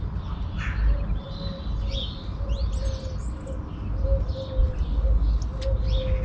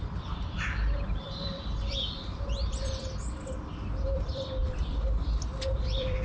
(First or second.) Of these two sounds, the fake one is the second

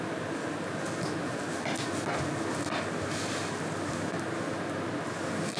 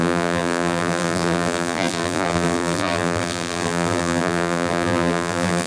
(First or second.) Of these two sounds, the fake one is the second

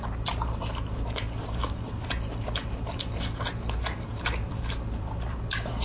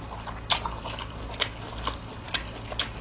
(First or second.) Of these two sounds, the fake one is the first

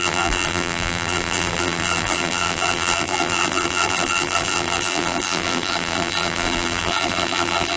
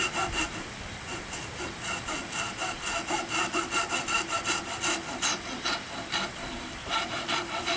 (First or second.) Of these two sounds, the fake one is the first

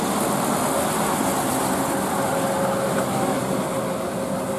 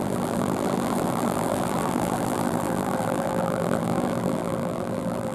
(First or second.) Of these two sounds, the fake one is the second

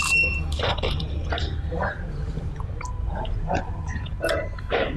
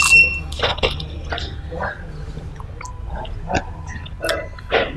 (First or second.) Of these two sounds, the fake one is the first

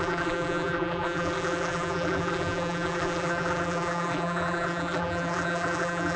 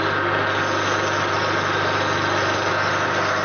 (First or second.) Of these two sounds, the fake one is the first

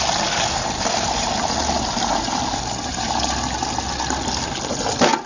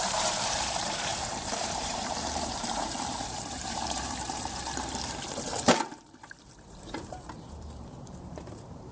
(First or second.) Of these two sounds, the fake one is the second